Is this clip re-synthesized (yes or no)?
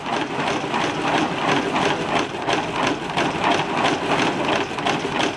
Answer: no